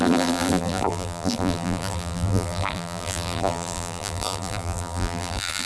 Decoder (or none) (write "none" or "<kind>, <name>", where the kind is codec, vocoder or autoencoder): vocoder, BigVGAN v2